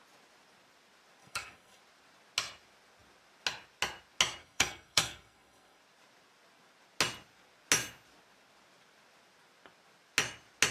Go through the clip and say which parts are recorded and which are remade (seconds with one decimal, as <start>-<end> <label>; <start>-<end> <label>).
0.0-1.2 recorded; 1.2-1.8 remade; 1.8-4.4 recorded; 4.4-5.8 remade; 5.8-10.7 recorded